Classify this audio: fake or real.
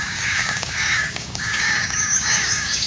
fake